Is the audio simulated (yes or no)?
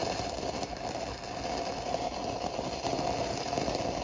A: yes